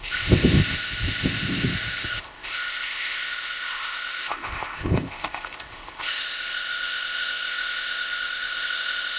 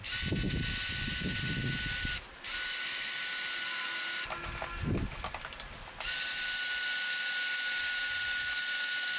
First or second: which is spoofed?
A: first